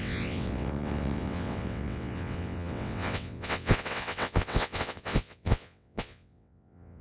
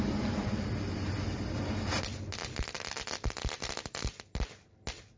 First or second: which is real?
second